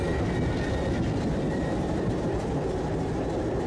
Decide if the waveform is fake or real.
real